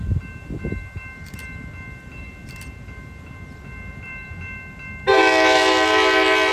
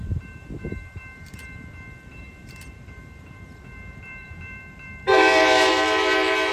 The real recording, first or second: first